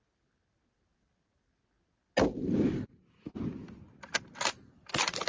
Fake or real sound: real